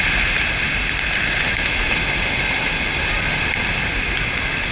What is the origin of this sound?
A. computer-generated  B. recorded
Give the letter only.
B